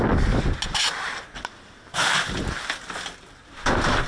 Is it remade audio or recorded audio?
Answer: recorded